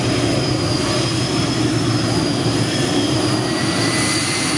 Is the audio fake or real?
real